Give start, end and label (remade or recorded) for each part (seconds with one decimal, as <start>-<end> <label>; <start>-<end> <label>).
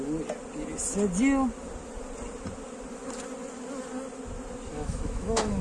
0.0-4.7 recorded; 4.7-5.6 remade